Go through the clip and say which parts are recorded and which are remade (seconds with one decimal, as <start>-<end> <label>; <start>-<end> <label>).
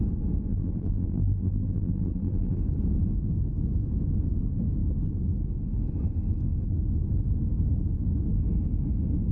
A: 0.0-0.5 recorded; 0.5-2.6 remade; 2.6-9.3 recorded